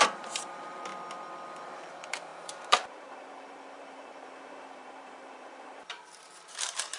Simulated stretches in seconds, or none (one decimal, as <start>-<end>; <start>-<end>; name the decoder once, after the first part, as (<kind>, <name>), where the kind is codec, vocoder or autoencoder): 0.0-0.9 (vocoder, BigVGAN v2); 1.9-7.0